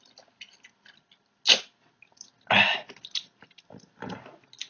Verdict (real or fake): real